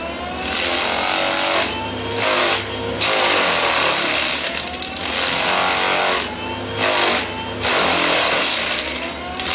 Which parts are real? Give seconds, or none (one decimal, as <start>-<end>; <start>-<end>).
0.0-2.4; 3.5-7.7; 8.7-9.5